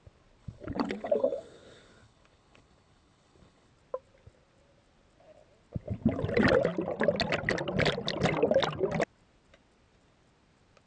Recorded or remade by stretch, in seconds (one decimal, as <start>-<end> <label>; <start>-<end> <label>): 0.0-0.4 recorded; 0.4-3.7 remade; 3.7-10.9 recorded